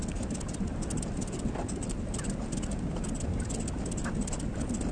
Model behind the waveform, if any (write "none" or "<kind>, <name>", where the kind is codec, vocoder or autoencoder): none